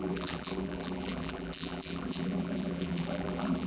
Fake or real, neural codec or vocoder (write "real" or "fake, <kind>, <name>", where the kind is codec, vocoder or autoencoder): fake, vocoder, BigVGAN v2